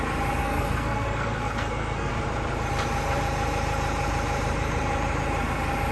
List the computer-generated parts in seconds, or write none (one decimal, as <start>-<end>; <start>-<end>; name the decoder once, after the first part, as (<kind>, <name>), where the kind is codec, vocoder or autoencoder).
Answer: 0.4-2.1 (codec, SNAC)